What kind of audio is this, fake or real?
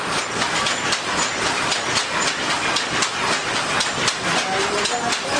real